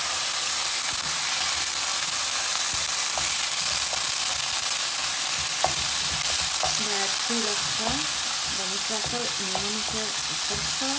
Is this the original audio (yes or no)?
yes